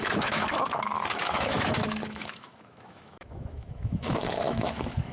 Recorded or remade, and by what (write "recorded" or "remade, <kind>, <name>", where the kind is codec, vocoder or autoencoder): remade, autoencoder, DAC-VAE